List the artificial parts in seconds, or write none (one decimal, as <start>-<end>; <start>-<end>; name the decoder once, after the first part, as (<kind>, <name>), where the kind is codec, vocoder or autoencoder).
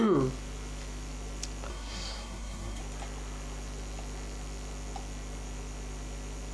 1.7-2.8 (codec, SNAC)